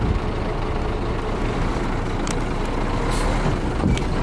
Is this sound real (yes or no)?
yes